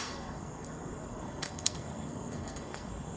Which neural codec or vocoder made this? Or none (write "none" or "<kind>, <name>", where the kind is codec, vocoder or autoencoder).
codec, SNAC